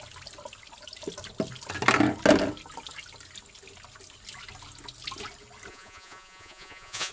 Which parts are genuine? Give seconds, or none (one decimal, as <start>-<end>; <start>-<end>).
0.0-5.7